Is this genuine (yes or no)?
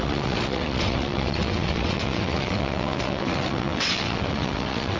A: no